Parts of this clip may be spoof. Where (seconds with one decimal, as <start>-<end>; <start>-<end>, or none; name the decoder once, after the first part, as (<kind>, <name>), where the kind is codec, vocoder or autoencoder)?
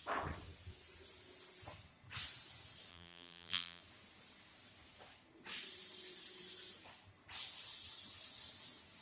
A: 2.9-3.8 (vocoder, BigVGAN v2)